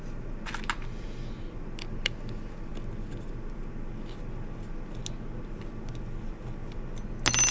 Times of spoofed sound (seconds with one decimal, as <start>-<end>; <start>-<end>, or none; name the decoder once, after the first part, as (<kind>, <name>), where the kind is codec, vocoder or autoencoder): none